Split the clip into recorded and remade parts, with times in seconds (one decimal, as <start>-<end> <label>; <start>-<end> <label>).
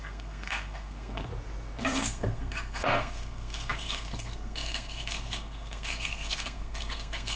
0.0-1.3 remade; 1.3-1.8 recorded; 1.8-7.4 remade